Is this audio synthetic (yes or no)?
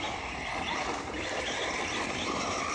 yes